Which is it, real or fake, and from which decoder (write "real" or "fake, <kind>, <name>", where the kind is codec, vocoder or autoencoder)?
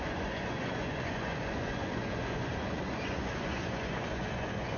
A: fake, vocoder, Vocos